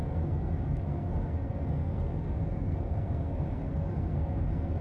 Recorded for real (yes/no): no